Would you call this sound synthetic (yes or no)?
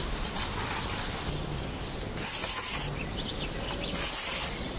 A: no